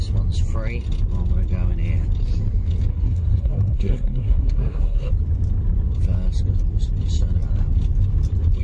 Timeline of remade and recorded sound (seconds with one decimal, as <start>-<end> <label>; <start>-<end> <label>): 0.0-2.9 recorded; 2.9-5.1 remade; 5.1-8.6 recorded